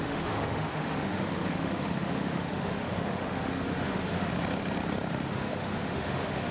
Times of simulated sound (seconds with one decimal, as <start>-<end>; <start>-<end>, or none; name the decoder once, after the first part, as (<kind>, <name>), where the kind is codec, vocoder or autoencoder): 0.0-4.3 (autoencoder, DAC-VAE); 5.1-6.5